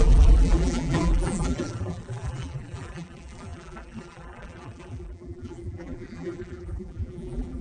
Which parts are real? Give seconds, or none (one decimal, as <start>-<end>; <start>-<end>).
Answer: none